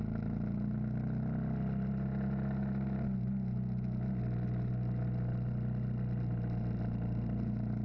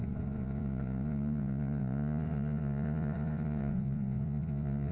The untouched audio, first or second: first